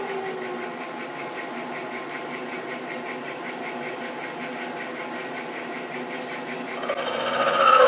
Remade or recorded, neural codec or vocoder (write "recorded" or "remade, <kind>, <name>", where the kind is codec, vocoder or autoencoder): recorded